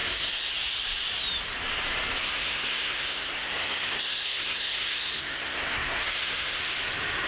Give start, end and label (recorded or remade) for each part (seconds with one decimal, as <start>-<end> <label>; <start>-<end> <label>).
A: 0.0-0.5 remade; 0.5-2.2 recorded; 2.2-6.6 remade; 6.6-7.3 recorded